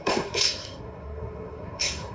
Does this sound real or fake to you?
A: fake